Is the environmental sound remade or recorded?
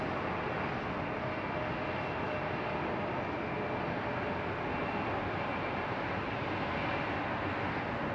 recorded